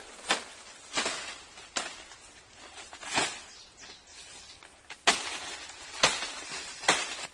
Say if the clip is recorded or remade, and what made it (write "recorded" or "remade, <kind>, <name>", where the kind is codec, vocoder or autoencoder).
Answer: recorded